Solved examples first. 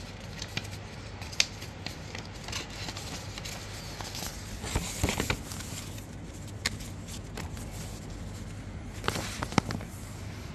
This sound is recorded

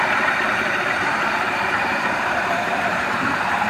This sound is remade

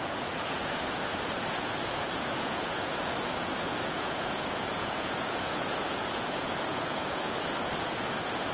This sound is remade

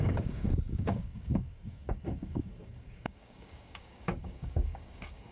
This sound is remade